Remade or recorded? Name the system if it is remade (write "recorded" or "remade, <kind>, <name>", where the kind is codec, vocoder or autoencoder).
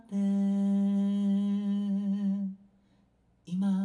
recorded